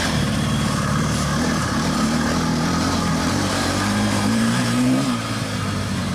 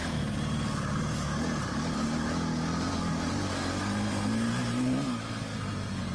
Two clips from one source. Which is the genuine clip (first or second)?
second